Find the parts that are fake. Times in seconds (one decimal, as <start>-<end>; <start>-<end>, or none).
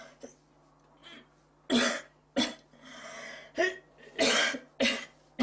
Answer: none